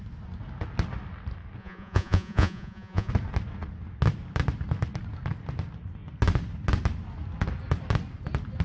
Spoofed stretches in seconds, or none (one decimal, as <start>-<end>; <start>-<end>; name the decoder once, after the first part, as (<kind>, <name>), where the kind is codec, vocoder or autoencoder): 1.6-3.1 (vocoder, Vocos)